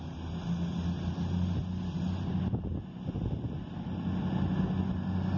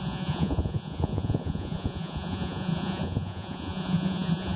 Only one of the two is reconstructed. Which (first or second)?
second